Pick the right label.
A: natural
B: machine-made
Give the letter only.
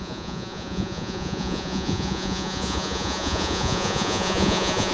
B